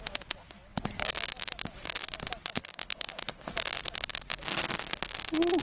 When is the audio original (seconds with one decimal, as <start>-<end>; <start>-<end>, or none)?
0.0-2.7; 3.5-5.6